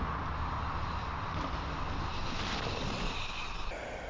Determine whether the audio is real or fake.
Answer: real